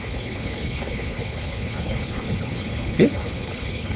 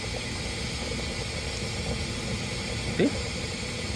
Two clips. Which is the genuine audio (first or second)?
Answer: second